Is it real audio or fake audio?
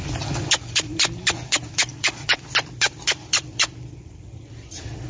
fake